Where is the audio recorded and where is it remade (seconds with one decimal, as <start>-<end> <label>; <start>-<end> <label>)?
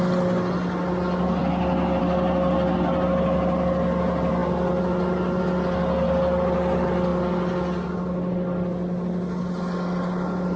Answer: 0.0-10.6 recorded